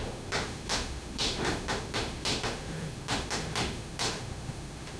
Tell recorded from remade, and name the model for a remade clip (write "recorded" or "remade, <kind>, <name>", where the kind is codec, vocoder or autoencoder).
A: remade, autoencoder, DAC-VAE